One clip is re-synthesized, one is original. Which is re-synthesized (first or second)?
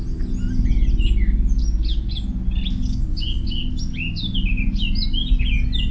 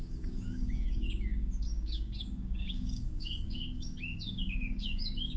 second